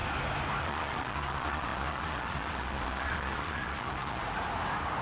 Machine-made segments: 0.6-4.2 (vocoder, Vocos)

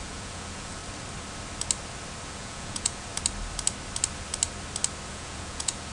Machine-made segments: 0.0-0.8 (vocoder, Vocos); 2.3-3.1; 5.1-5.9

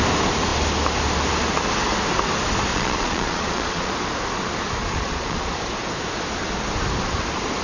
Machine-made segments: 2.7-3.9 (vocoder, Vocos); 4.8-5.5

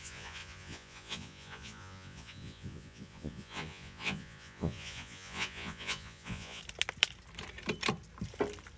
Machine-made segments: 0.0-6.6 (vocoder, Vocos)

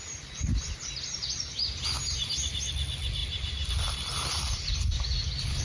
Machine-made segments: none